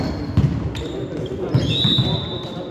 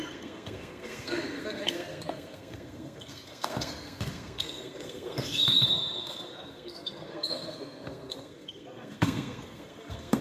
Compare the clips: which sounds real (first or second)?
first